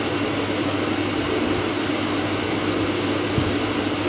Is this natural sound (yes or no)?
yes